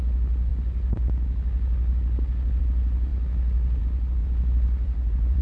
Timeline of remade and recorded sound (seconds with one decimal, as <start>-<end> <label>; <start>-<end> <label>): 0.0-4.2 recorded; 4.2-5.4 remade